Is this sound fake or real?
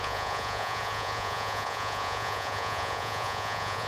fake